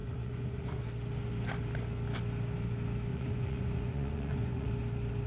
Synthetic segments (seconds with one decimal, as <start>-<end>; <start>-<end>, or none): 0.0-0.8; 3.1-4.7